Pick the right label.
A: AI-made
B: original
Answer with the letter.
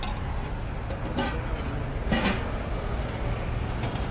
B